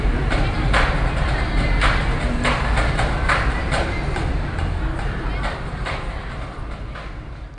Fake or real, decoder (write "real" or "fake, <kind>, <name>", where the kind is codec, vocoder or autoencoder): real